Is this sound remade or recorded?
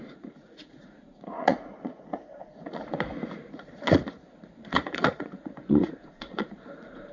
remade